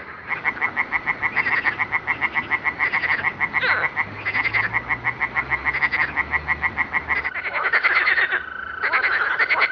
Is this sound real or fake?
real